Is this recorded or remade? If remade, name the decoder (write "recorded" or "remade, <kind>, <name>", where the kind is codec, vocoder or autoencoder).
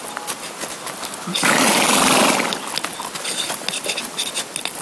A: recorded